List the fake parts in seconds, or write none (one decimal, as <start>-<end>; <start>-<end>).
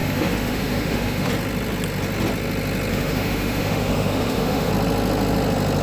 0.0-1.3; 2.9-4.7